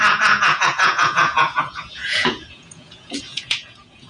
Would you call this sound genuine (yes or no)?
no